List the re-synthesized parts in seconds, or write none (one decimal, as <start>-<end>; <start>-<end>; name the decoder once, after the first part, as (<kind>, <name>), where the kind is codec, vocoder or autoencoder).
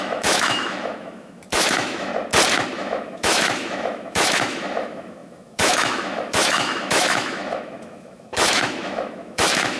0.0-2.1 (autoencoder, DAC-VAE); 2.7-9.8